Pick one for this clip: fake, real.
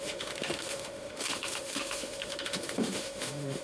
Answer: fake